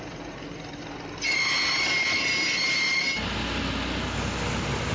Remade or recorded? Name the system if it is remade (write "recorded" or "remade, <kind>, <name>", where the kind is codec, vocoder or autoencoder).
recorded